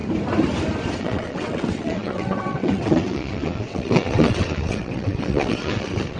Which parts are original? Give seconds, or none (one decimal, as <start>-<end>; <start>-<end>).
0.0-1.0